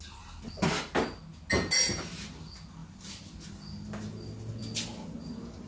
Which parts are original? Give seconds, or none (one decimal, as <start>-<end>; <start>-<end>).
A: 0.0-5.7

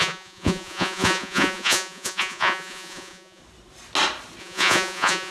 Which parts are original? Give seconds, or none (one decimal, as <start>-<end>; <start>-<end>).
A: 3.4-4.4

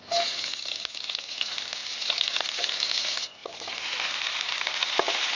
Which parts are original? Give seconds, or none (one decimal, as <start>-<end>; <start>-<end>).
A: 0.0-5.3